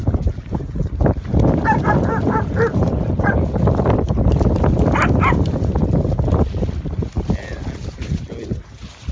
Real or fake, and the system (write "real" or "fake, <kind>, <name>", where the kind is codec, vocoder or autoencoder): real